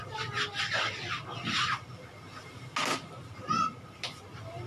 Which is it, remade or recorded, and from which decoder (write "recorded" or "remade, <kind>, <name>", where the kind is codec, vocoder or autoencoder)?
recorded